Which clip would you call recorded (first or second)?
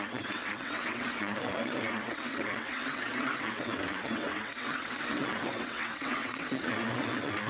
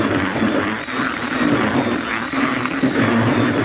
second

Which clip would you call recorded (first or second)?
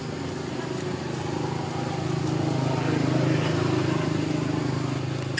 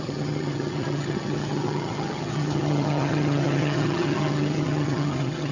first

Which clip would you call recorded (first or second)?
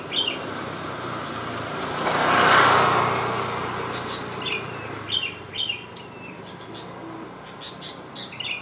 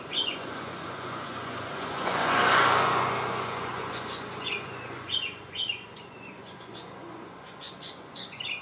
first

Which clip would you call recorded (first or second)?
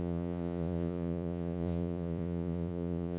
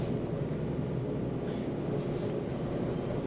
second